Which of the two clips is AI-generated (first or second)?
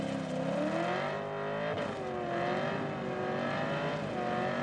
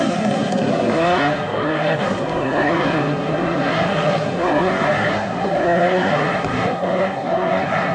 second